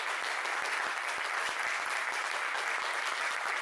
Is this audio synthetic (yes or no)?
no